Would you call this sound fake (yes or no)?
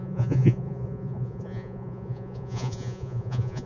yes